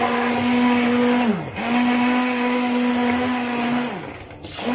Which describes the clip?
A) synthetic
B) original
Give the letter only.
B